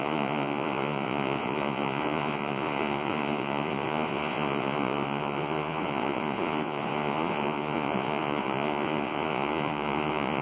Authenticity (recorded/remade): remade